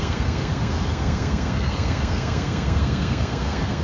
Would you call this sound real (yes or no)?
no